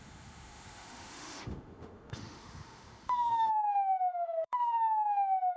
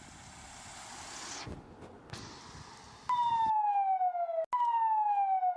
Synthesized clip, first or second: first